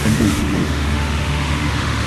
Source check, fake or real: fake